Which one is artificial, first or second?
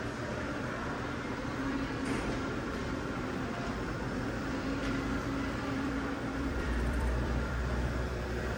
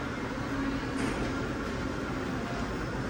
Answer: first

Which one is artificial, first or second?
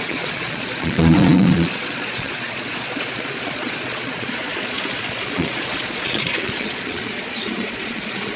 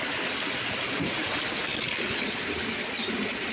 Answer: first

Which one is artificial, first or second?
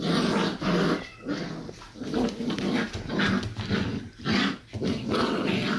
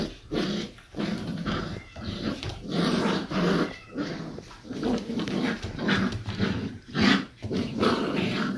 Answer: second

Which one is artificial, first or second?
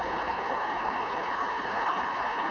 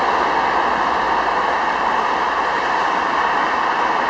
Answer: first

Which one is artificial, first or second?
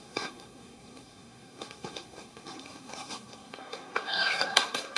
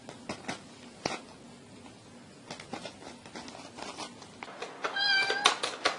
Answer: first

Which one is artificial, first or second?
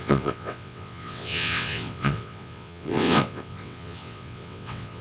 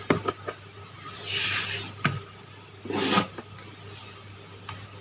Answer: first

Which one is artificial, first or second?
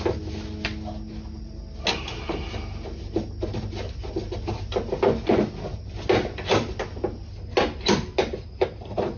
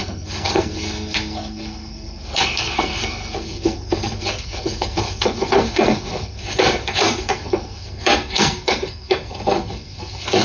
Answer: second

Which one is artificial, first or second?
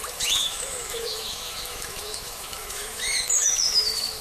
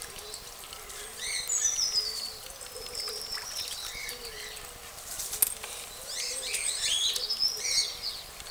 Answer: first